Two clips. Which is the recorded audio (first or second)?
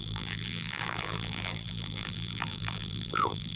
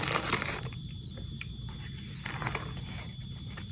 second